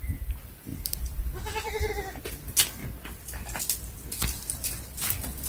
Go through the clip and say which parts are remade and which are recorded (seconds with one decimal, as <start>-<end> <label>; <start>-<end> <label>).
0.0-0.7 recorded; 0.7-1.9 remade; 1.9-5.5 recorded